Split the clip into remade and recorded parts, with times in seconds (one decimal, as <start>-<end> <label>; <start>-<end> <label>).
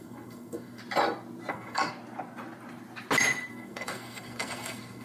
0.0-0.8 remade; 0.8-1.5 recorded; 1.5-1.9 remade; 1.9-3.5 recorded; 3.5-5.0 remade